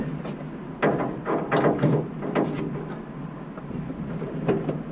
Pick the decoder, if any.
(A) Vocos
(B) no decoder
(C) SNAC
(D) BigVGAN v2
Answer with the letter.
B